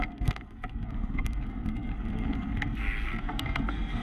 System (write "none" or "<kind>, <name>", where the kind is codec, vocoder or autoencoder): codec, SNAC